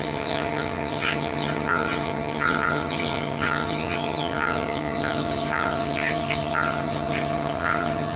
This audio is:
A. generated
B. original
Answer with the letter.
A